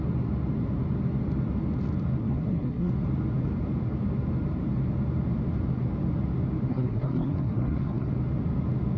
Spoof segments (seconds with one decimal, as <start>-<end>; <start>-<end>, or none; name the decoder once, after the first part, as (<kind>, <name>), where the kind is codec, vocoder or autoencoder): 2.2-2.9 (codec, SNAC); 6.7-8.1